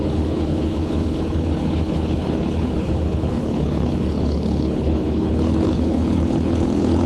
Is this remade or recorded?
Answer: remade